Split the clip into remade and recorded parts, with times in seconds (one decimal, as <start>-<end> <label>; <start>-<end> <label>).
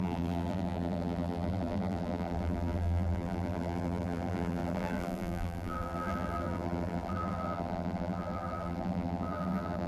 0.0-9.9 remade